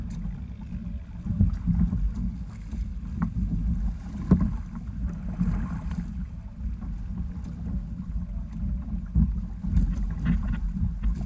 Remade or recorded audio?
recorded